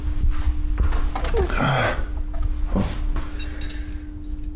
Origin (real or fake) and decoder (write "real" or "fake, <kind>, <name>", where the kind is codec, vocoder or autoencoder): real